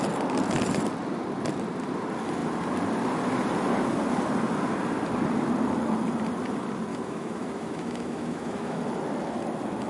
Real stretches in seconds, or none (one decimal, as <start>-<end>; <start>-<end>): 0.0-6.9; 8.8-9.9